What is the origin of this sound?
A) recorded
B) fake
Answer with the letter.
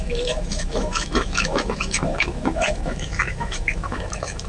B